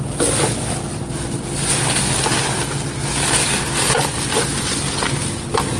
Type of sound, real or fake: real